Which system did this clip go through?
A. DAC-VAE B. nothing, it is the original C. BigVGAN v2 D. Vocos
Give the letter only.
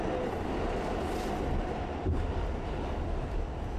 B